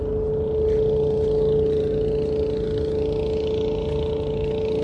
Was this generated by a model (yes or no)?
no